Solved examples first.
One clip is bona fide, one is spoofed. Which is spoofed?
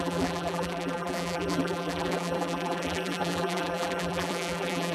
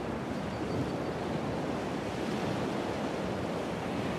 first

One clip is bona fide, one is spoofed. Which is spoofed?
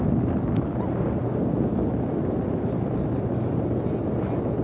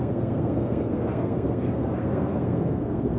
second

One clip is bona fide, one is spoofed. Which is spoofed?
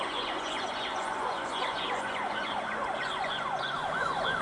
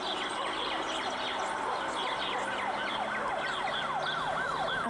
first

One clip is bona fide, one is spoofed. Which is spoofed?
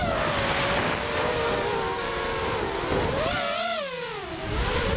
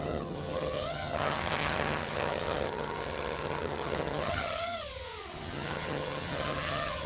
second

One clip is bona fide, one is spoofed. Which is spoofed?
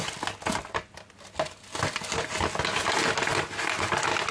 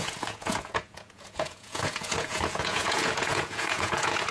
second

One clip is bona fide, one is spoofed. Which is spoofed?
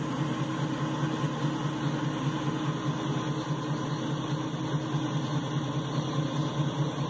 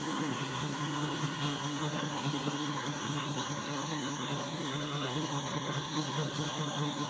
second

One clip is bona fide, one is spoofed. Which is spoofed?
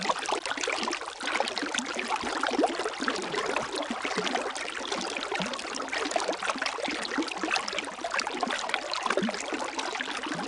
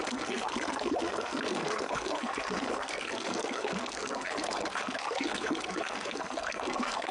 second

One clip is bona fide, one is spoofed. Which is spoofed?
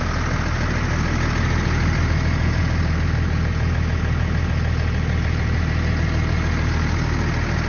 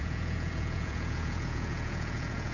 second